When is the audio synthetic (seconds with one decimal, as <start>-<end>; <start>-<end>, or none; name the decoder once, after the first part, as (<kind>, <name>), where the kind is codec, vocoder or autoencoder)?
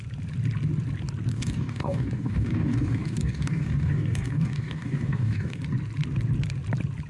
1.3-5.6 (codec, DAC)